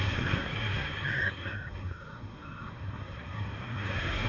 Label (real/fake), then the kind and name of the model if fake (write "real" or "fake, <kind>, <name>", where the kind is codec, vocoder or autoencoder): fake, codec, SNAC